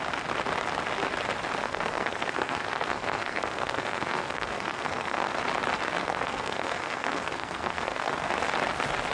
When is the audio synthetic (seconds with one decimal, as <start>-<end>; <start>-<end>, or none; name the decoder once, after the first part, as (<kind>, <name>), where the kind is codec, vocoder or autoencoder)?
1.6-5.4 (codec, SNAC); 6.0-8.3